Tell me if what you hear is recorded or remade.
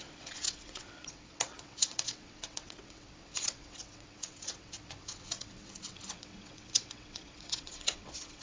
remade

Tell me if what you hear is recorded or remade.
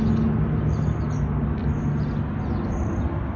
recorded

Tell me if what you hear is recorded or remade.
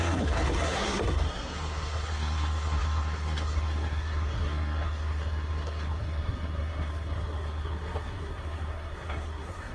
remade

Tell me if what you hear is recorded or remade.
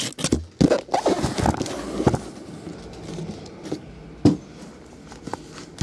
recorded